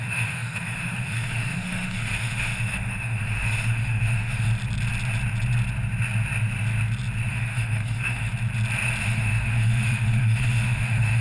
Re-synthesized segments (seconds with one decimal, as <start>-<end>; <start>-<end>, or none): 0.0-4.5; 7.3-8.3; 9.0-11.2